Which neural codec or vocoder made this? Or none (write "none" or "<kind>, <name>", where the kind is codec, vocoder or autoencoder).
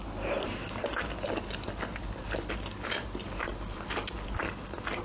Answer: none